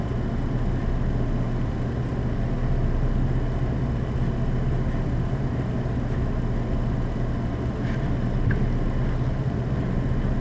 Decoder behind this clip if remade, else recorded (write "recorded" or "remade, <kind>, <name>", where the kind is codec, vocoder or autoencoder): recorded